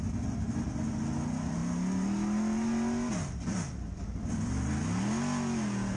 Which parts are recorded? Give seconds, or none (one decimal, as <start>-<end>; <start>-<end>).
0.0-6.0